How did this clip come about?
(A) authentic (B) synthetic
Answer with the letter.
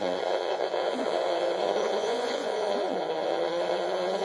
B